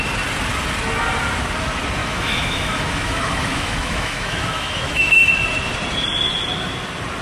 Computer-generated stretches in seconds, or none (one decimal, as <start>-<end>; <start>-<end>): 2.0-5.2